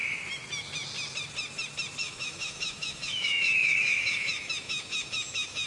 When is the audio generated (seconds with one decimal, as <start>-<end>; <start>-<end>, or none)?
2.0-5.7